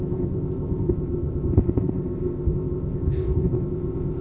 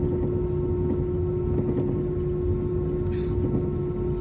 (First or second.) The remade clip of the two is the first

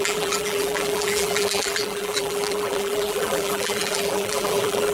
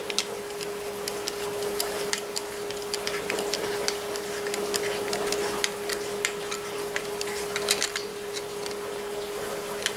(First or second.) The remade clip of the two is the first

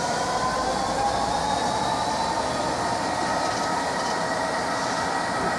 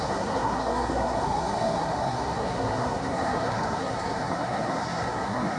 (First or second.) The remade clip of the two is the second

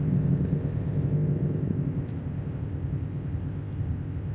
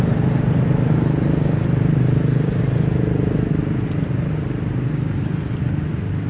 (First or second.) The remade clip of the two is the first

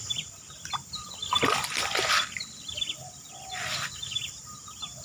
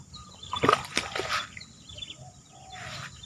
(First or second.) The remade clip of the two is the first